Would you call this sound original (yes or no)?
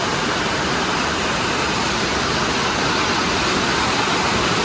yes